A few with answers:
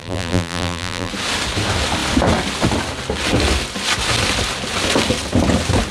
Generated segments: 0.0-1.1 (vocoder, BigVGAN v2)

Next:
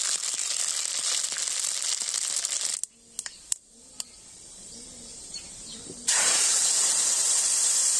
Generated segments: 5.1-7.4 (vocoder, BigVGAN v2)

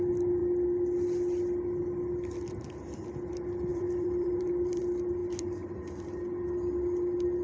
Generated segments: 3.7-4.8 (vocoder, BigVGAN v2); 5.2-6.2